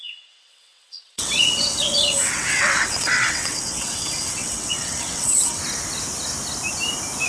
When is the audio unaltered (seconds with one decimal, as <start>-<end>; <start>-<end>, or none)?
5.6-7.3